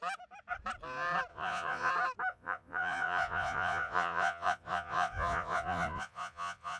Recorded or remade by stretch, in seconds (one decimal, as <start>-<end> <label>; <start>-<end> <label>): 0.0-1.3 recorded; 1.3-1.9 remade; 1.9-2.3 recorded; 2.3-6.8 remade